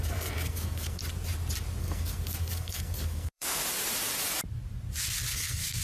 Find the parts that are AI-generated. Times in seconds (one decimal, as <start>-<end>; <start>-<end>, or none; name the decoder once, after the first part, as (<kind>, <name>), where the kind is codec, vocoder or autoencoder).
0.0-1.0 (codec, SNAC); 1.8-3.6; 5.3-5.8

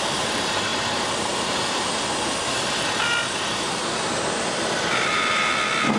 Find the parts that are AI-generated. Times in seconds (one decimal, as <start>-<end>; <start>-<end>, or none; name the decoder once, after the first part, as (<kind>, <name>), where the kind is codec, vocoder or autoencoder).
none

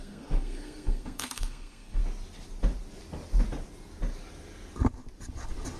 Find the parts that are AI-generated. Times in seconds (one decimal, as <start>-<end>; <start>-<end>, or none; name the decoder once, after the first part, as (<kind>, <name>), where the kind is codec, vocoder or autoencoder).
0.0-2.0 (codec, SNAC)

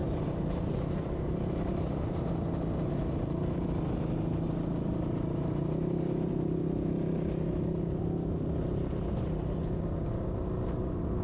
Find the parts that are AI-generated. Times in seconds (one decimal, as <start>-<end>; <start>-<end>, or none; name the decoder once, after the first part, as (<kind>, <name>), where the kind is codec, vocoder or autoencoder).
0.0-2.3 (vocoder, BigVGAN v2)

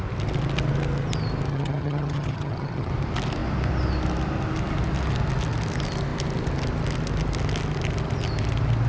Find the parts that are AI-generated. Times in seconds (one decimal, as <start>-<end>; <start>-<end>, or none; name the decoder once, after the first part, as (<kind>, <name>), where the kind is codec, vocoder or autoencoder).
1.5-2.9 (vocoder, HiFi-GAN)